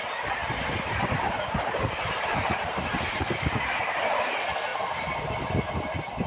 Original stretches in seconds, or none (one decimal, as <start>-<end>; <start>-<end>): 0.0-0.4; 4.2-4.7; 5.2-6.3